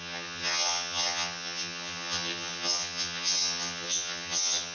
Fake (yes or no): yes